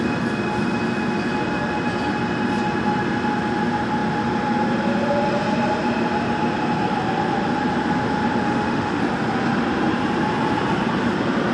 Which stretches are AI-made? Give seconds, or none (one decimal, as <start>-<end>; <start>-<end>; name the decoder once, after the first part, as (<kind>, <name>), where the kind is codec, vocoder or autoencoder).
8.4-9.0 (autoencoder, DAC-VAE)